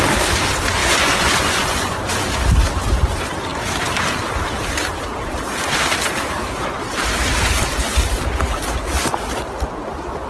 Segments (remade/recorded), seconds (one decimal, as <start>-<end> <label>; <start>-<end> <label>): 0.0-0.8 recorded; 0.8-2.0 remade; 2.0-10.3 recorded